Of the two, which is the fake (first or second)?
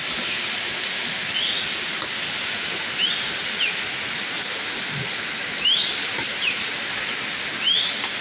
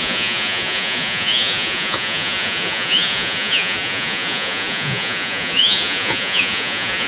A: second